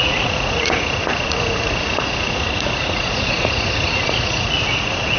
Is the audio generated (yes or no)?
yes